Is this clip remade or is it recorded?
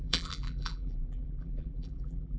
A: remade